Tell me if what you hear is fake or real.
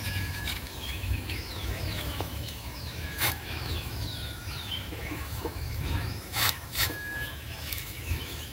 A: fake